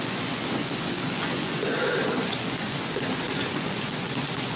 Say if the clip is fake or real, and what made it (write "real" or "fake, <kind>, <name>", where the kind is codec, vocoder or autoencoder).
fake, vocoder, Vocos